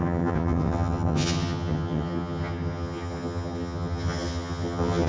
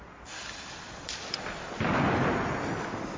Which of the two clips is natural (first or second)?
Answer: second